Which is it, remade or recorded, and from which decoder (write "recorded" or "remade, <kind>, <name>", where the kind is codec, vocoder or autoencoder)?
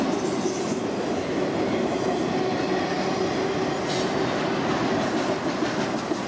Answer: recorded